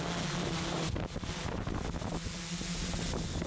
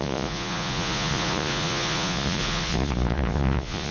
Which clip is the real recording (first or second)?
first